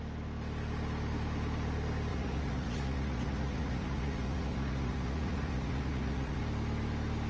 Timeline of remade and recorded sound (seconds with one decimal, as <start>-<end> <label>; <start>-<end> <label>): 0.0-2.1 recorded; 2.1-6.4 remade; 6.4-7.3 recorded